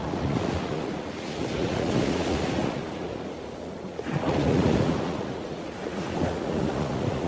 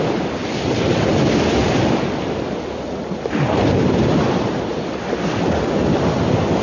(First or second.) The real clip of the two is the second